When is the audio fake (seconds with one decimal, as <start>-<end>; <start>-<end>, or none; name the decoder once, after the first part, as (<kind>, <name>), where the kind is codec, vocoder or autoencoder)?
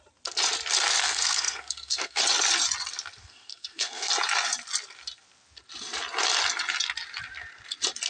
1.0-2.2 (codec, SNAC); 3.2-4.1